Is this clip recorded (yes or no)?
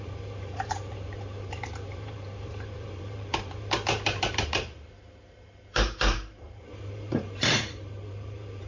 no